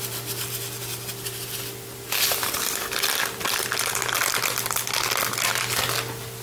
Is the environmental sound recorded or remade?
recorded